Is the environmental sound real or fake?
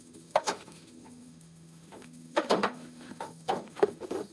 fake